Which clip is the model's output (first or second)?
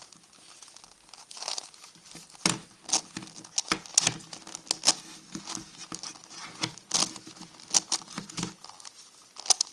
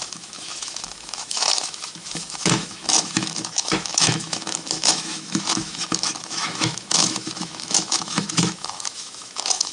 second